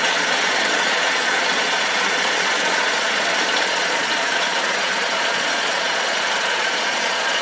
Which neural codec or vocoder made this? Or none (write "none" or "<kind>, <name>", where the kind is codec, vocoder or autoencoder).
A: vocoder, Vocos